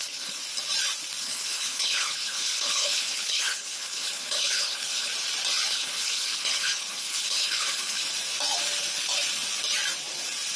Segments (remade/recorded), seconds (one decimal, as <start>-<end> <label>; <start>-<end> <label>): 0.0-0.4 remade; 0.4-1.2 recorded; 1.2-5.1 remade; 5.1-5.7 recorded; 5.7-8.0 remade; 8.0-10.6 recorded